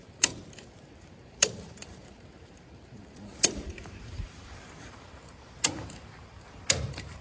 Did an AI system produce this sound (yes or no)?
yes